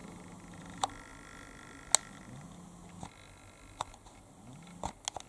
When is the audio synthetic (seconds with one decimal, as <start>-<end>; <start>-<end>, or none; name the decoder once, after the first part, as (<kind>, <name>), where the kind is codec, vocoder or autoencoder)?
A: none